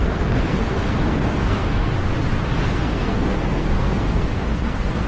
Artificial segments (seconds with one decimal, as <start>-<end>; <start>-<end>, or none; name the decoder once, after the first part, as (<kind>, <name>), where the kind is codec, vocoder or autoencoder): 0.0-1.9 (codec, SNAC); 2.6-5.1